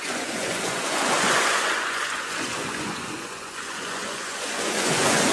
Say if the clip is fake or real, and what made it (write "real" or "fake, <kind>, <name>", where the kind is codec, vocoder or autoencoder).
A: fake, vocoder, Vocos